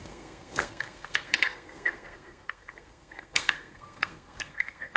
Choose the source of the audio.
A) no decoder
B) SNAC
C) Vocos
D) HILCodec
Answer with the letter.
B